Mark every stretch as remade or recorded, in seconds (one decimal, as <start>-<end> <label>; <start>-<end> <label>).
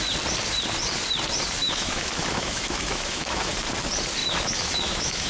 0.0-1.6 recorded; 1.6-3.5 remade; 3.5-4.2 recorded; 4.2-5.3 remade